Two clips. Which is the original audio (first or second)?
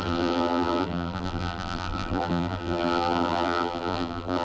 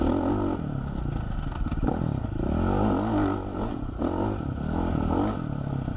second